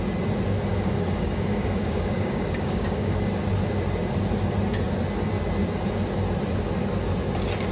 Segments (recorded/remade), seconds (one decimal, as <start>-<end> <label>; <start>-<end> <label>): 0.0-0.7 recorded; 0.7-3.2 remade; 3.2-7.7 recorded